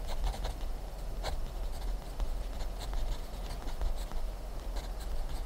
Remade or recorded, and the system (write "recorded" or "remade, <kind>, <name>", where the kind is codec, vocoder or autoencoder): recorded